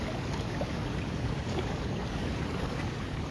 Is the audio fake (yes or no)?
yes